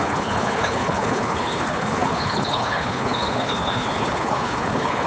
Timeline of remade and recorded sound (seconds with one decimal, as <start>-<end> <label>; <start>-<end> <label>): 0.0-5.1 remade